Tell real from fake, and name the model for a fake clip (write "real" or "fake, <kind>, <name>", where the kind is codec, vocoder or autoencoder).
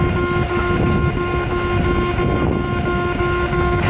real